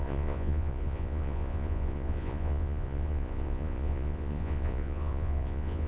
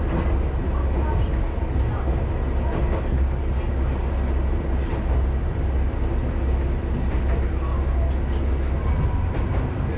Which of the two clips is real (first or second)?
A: second